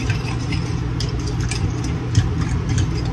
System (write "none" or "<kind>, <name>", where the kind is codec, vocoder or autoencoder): none